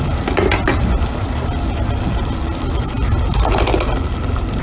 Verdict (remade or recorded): recorded